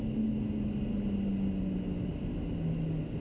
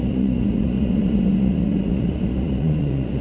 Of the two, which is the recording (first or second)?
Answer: first